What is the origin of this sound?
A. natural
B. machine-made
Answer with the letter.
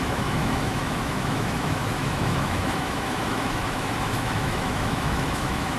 B